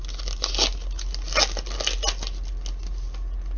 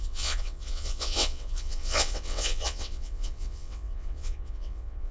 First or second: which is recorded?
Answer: first